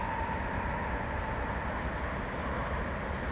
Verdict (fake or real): real